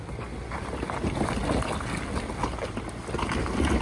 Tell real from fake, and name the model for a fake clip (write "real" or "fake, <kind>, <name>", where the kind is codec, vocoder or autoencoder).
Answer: real